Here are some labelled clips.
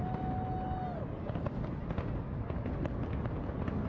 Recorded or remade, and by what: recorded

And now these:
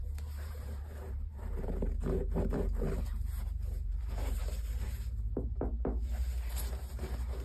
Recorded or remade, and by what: remade, vocoder, BigVGAN v2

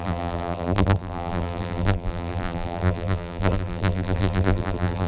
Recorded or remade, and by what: remade, vocoder, BigVGAN v2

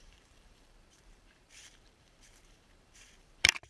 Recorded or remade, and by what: remade, vocoder, BigVGAN v2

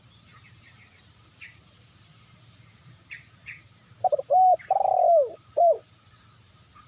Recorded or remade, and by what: remade, vocoder, BigVGAN v2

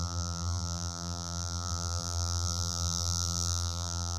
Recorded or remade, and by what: remade, vocoder, BigVGAN v2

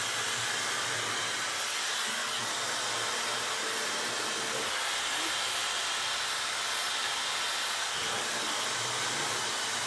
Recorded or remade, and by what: remade, vocoder, BigVGAN v2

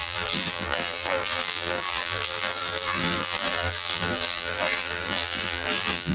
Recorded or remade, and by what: remade, vocoder, BigVGAN v2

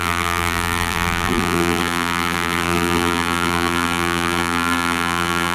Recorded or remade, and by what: remade, vocoder, BigVGAN v2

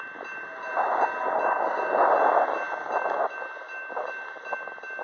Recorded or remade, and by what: recorded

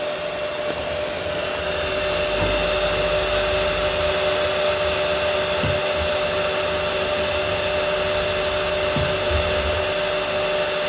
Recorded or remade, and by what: recorded